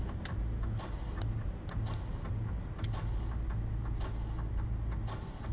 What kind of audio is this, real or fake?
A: real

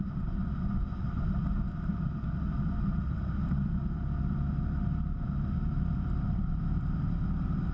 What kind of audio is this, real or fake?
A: fake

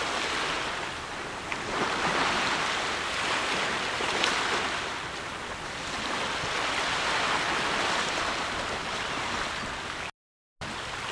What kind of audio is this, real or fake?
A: real